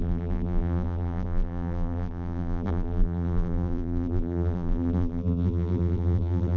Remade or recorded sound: remade